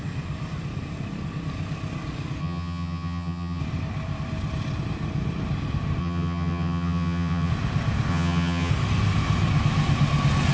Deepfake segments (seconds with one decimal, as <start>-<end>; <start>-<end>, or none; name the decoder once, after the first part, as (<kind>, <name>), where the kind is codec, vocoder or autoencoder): 2.4-3.6 (vocoder, HiFi-GAN); 6.0-7.5; 8.1-8.7